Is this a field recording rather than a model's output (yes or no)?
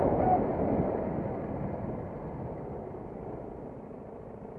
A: yes